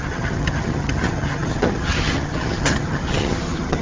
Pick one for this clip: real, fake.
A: fake